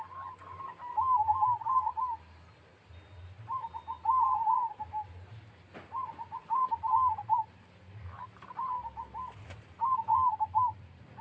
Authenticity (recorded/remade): recorded